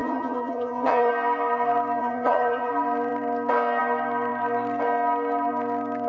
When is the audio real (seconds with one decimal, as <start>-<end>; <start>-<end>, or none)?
1.1-2.0; 2.7-6.1

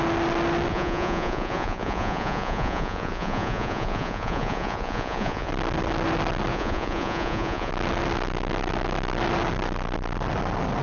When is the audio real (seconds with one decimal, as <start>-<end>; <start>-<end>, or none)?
0.0-0.7; 5.5-6.5; 7.7-10.8

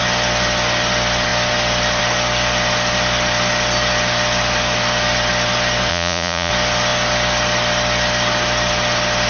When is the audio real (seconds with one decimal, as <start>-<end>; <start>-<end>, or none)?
0.0-5.9; 6.5-9.3

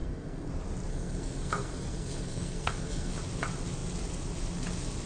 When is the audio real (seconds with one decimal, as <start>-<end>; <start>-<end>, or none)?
0.5-0.9; 3.1-5.1

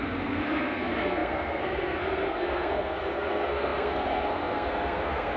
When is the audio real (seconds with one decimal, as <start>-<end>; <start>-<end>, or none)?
none

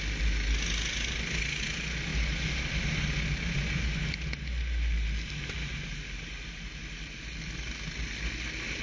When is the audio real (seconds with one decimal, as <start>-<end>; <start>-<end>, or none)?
0.0-8.8